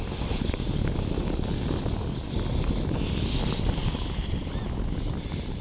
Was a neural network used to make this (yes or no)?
no